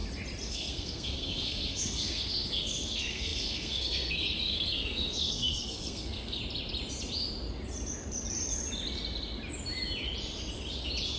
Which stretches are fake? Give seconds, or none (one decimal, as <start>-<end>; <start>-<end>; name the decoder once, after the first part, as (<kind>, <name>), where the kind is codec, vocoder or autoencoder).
0.5-6.4 (codec, SNAC)